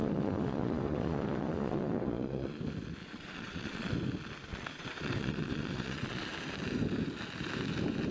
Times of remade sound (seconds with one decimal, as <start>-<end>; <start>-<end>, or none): 0.0-2.6; 3.0-3.9; 4.5-6.3